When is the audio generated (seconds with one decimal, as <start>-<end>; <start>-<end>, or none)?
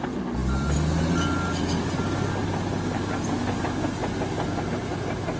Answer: none